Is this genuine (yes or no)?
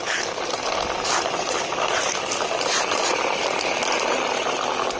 yes